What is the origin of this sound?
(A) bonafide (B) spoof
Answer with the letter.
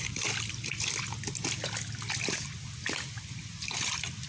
A